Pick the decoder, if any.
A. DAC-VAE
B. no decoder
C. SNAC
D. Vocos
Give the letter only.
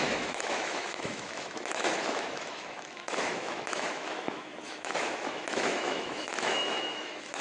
A